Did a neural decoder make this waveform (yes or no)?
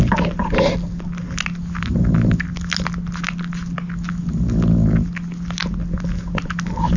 no